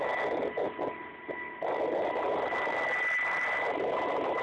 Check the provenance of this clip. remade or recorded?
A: recorded